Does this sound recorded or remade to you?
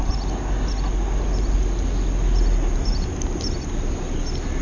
recorded